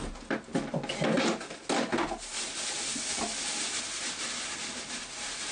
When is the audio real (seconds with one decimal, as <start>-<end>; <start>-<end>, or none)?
0.0-5.5